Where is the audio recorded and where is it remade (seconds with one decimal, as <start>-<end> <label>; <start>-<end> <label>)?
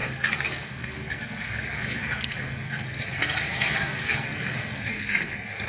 0.0-5.7 remade